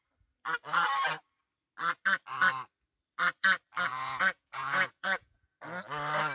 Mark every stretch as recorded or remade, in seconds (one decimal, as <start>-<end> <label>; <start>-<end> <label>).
0.0-3.9 recorded; 3.9-5.6 remade; 5.6-6.3 recorded